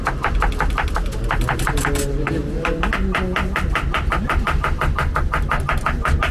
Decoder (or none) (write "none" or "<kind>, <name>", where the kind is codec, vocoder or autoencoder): none